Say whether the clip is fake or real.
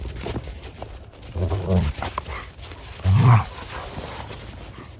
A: fake